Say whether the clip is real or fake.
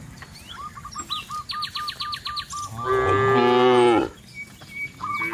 real